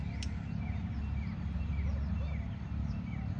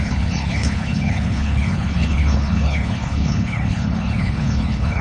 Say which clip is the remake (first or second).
second